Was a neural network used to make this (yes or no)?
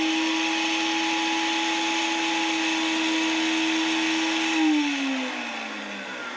no